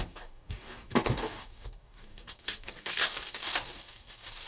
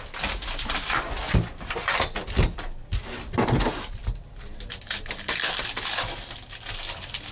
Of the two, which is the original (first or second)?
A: second